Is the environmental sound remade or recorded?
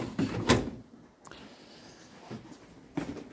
recorded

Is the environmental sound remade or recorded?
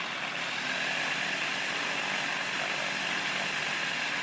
recorded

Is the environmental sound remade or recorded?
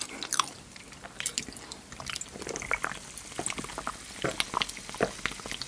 recorded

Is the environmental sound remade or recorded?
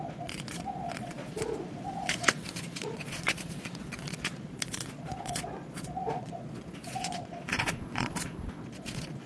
remade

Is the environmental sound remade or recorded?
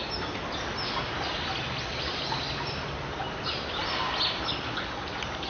recorded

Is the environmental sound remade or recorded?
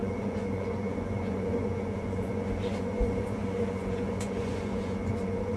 remade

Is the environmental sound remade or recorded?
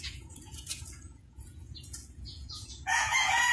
remade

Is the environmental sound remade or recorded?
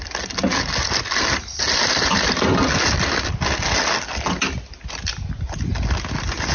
recorded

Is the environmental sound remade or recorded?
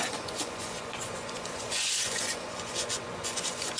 remade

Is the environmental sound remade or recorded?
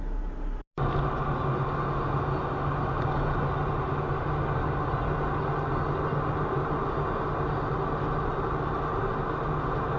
recorded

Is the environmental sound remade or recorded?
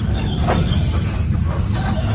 recorded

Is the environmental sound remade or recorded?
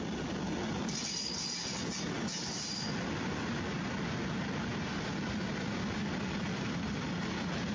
recorded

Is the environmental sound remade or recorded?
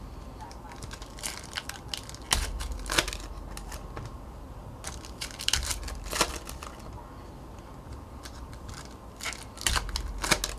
recorded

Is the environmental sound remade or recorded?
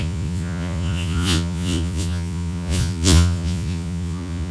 remade